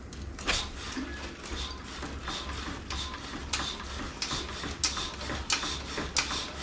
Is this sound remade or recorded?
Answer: recorded